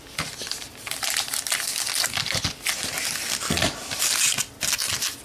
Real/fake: real